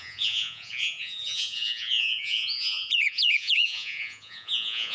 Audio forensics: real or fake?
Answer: fake